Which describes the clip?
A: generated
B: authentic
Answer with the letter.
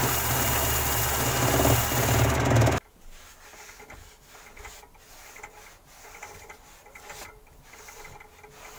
B